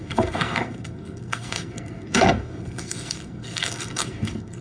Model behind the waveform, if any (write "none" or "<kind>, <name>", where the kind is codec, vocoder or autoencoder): codec, SNAC